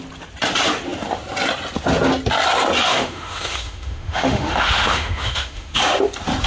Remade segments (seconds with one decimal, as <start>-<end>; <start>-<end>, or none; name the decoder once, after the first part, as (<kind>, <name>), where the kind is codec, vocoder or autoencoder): 2.9-5.8 (autoencoder, DAC-VAE)